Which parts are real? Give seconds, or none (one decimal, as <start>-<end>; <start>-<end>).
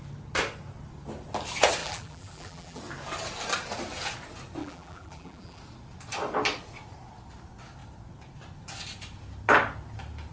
0.0-1.8; 2.8-4.6; 5.6-10.3